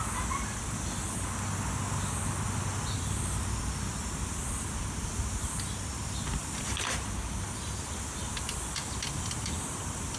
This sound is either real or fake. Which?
real